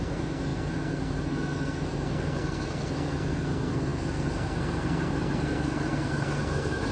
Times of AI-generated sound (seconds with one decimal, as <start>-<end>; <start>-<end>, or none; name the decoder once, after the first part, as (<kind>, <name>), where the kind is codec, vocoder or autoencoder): 0.0-6.9 (codec, SNAC)

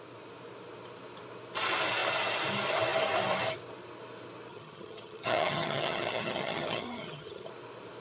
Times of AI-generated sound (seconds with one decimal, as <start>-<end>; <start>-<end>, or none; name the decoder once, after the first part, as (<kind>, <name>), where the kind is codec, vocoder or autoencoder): 4.5-7.5 (vocoder, HiFi-GAN)

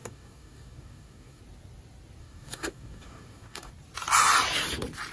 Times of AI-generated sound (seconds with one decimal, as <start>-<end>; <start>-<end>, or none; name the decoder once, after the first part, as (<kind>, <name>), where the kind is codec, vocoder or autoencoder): 0.0-1.4 (codec, DAC); 2.2-3.7

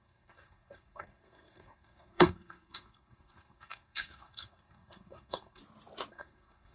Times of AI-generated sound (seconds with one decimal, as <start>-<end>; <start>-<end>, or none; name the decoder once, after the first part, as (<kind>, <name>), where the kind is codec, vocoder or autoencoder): 0.0-5.6 (codec, SNAC); 6.1-6.7

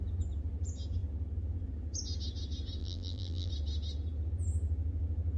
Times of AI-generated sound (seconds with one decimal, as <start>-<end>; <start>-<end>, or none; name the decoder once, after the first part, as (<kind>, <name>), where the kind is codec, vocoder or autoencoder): 2.8-3.5 (vocoder, BigVGAN v2)

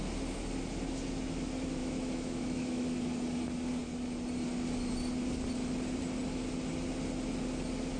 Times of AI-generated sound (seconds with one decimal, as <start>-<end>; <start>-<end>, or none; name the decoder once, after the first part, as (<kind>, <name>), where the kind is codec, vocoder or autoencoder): 1.8-2.8 (autoencoder, DAC-VAE)